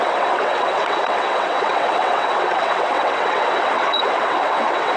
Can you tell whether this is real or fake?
fake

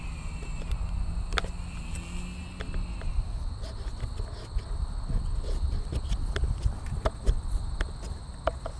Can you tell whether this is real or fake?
real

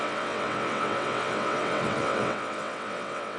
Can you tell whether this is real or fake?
fake